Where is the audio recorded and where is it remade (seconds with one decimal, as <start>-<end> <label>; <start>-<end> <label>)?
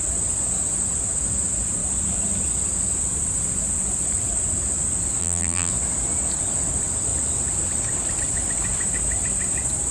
0.0-5.2 recorded; 5.2-5.7 remade; 5.7-9.9 recorded